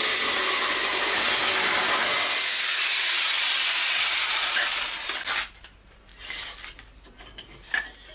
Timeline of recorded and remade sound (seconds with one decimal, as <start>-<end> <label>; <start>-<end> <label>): 0.0-1.4 remade; 1.4-5.6 recorded; 5.6-6.1 remade; 6.1-8.1 recorded